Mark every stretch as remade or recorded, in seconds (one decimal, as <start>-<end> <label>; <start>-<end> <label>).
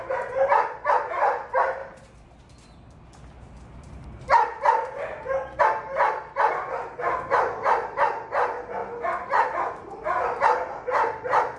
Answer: 0.0-11.6 recorded